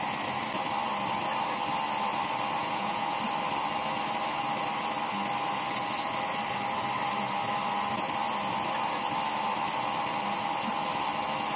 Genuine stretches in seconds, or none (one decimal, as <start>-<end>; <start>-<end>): 0.0-2.6; 3.2-11.6